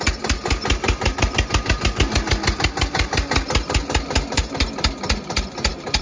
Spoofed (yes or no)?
no